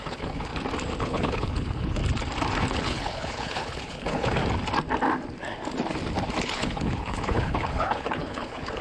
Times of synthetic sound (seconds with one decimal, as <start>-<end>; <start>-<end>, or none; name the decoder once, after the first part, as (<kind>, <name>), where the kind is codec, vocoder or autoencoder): 0.0-0.5 (codec, HILCodec); 1.0-2.0; 2.7-4.4; 6.4-8.8